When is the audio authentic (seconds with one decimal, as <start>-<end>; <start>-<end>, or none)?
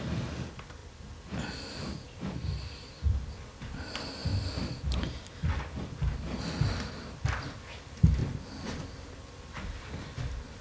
0.0-10.6